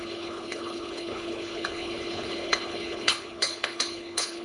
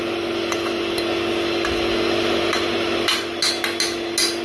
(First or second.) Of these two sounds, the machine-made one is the first